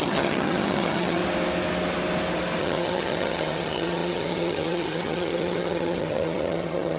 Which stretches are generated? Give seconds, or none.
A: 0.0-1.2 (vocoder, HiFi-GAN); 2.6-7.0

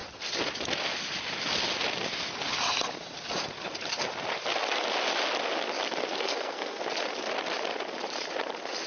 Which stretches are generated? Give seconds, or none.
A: 6.1-6.8 (codec, SNAC)

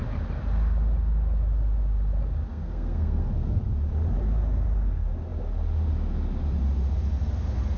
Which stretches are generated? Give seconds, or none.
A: 2.5-3.6 (codec, SNAC)

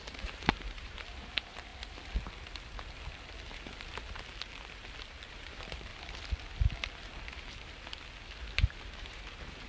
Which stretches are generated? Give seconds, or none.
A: 0.0-1.7 (vocoder, BigVGAN v2); 5.3-5.9; 8.9-9.7

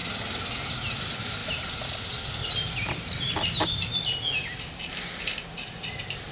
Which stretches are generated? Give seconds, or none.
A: none

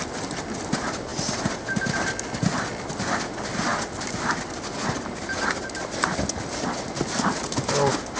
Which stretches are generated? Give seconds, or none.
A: none

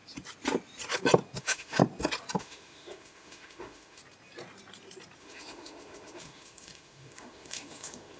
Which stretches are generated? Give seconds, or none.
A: 1.4-1.8 (autoencoder, DAC-VAE); 2.4-4.0; 5.2-8.2